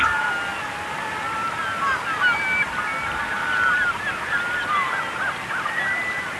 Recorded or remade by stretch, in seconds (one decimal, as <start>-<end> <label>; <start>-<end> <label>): 0.0-6.4 recorded